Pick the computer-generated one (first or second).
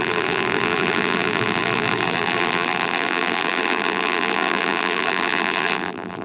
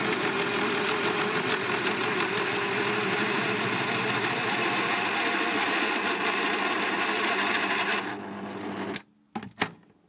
first